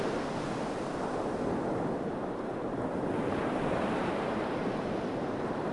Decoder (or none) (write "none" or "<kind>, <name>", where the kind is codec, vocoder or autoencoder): none